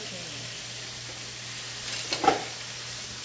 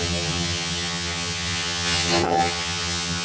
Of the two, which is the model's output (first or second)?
second